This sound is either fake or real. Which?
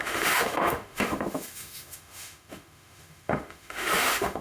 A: fake